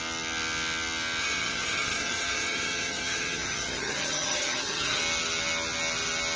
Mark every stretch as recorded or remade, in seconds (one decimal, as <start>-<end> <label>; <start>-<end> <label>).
0.0-1.2 recorded; 1.2-5.0 remade; 5.0-6.4 recorded